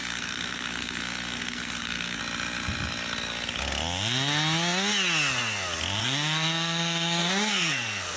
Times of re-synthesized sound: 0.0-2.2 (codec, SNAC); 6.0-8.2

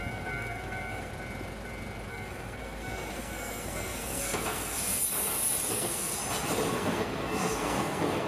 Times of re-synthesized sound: 0.0-1.1 (codec, SNAC); 2.1-5.0; 5.7-6.2; 6.7-8.3

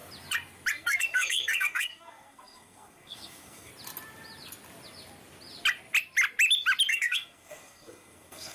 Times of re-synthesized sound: 0.7-3.7 (codec, SNAC); 6.9-8.5

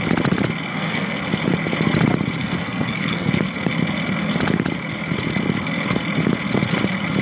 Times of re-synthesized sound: 0.7-1.2 (codec, SNAC); 2.4-3.3

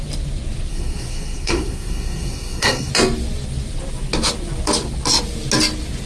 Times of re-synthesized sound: 0.7-2.9 (codec, SNAC)

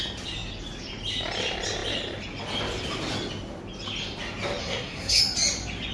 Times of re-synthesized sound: 4.6-5.2 (codec, SNAC)

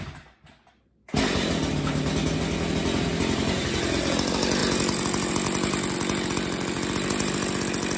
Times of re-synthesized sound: none

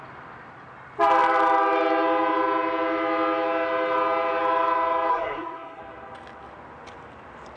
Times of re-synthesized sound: 5.1-5.8 (codec, SNAC)